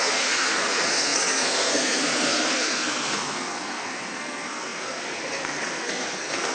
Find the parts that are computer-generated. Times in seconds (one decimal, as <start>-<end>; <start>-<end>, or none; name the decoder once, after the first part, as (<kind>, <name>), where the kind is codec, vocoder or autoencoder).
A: 0.0-6.5 (codec, SNAC)